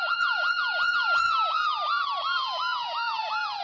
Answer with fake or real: fake